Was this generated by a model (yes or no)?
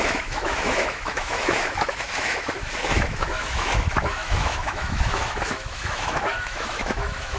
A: yes